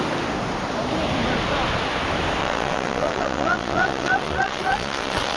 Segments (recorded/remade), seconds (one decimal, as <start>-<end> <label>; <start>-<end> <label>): 0.0-2.4 recorded; 2.4-5.4 remade